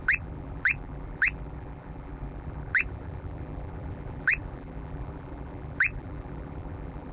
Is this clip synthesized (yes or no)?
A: yes